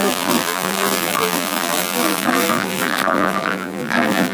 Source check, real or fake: fake